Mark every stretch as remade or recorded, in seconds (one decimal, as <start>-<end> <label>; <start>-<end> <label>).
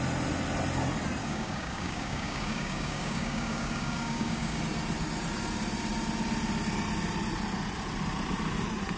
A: 0.0-1.2 recorded; 1.2-4.6 remade; 4.6-9.0 recorded